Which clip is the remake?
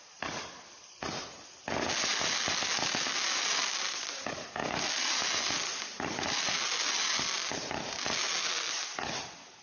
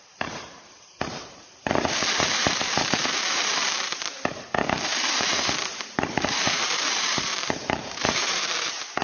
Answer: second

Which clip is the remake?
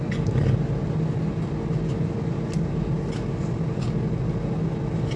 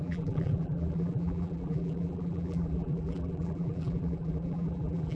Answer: second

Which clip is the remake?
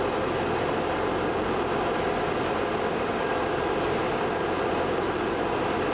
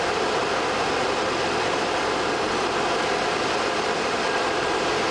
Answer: second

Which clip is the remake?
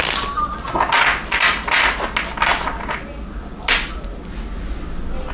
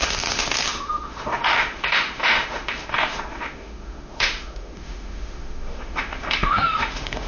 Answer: second